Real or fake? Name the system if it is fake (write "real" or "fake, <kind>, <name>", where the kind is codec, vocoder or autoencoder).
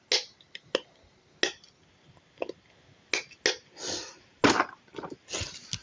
real